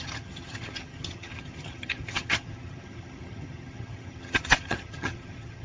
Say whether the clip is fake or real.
fake